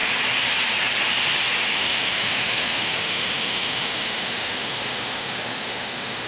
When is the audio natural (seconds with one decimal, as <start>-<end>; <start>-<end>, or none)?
0.0-1.7